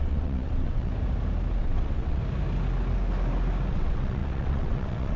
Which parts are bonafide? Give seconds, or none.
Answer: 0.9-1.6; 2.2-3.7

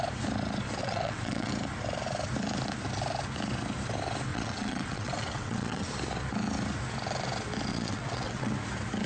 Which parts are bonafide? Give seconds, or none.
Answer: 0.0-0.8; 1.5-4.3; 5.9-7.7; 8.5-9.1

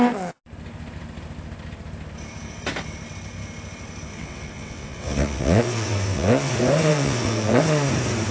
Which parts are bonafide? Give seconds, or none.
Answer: 0.0-4.1; 6.5-6.9; 7.6-8.3

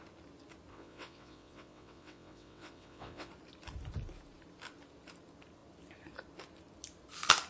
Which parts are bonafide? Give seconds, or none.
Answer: 0.0-0.7; 3.3-7.5

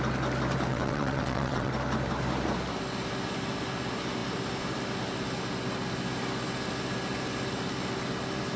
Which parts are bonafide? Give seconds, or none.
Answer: 0.0-0.7; 1.7-8.6

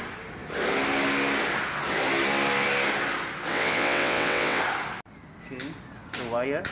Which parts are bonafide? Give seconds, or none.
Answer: 0.0-3.5; 4.6-6.7